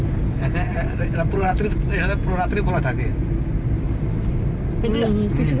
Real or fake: real